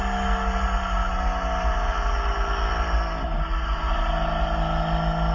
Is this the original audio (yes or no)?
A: yes